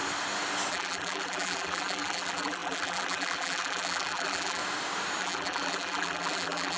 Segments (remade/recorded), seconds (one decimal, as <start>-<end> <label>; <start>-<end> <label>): 0.0-0.7 recorded; 0.7-4.6 remade; 4.6-5.2 recorded; 5.2-6.8 remade

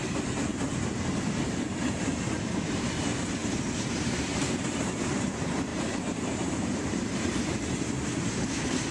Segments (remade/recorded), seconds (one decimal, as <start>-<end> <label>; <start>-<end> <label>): 0.0-0.5 remade; 0.5-1.1 recorded; 1.1-8.9 remade